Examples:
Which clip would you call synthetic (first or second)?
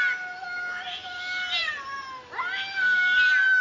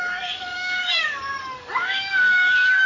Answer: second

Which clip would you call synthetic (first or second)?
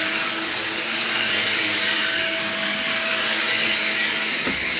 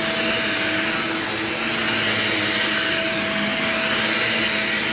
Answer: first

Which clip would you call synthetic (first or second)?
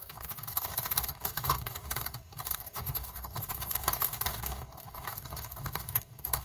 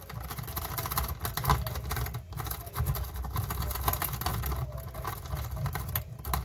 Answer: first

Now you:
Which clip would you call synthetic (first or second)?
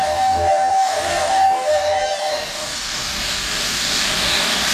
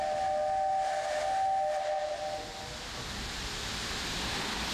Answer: first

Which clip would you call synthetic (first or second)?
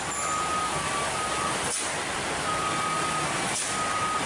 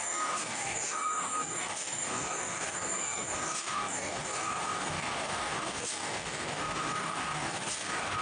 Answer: second